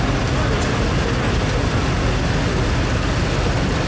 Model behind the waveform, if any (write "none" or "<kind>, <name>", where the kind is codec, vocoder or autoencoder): none